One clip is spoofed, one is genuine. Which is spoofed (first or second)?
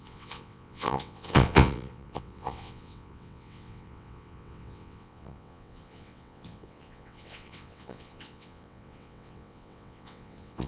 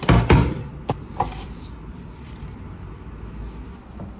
first